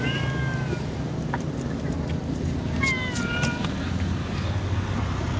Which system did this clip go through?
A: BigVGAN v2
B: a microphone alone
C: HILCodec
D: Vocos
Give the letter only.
B